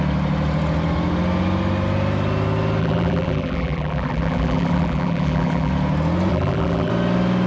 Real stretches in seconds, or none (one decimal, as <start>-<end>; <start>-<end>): 0.0-2.8; 5.7-6.3; 6.9-7.5